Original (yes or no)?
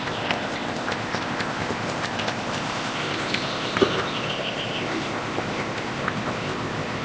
no